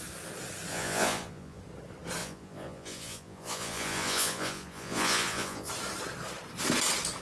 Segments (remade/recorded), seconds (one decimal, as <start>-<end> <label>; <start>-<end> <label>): 0.0-0.7 recorded; 0.7-1.6 remade; 1.6-2.2 recorded; 2.2-5.7 remade; 5.7-7.2 recorded